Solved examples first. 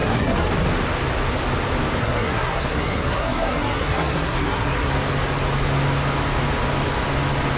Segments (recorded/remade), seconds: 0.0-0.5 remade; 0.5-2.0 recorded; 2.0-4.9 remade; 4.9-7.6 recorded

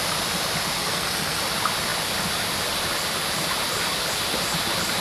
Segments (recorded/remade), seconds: 0.0-0.8 recorded; 0.8-1.4 remade; 1.4-5.0 recorded

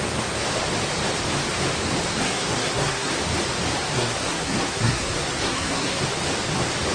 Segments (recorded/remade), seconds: 0.0-2.2 recorded; 2.2-3.1 remade; 3.1-3.9 recorded; 3.9-6.0 remade; 6.0-6.9 recorded

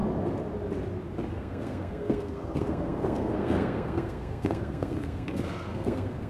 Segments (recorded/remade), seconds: 0.0-1.3 recorded; 1.3-6.3 remade